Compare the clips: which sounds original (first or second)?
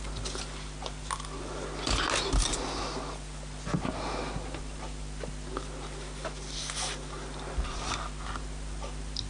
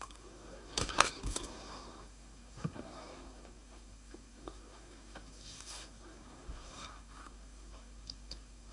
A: first